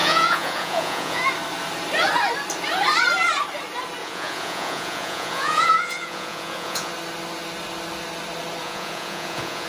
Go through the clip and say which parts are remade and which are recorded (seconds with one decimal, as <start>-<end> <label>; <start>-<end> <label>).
0.0-1.2 remade; 1.2-4.0 recorded; 4.0-6.9 remade; 6.9-8.6 recorded; 8.6-9.7 remade